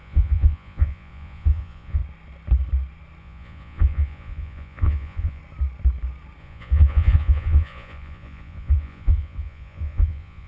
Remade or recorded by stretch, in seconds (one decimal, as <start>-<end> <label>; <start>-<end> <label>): 0.0-2.0 remade; 2.0-3.2 recorded; 3.2-5.4 remade; 5.4-6.4 recorded; 6.4-10.5 remade

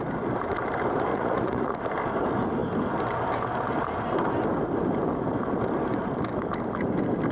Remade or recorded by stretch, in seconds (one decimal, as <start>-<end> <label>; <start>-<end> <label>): 0.0-1.1 recorded; 1.1-1.8 remade; 1.8-7.3 recorded

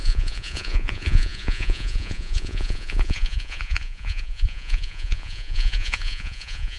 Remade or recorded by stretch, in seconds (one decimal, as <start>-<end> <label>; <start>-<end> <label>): 0.0-6.8 remade